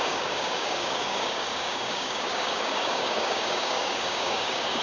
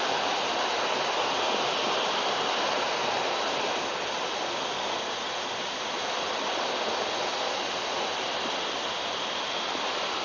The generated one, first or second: first